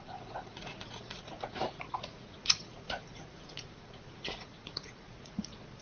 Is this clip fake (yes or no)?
yes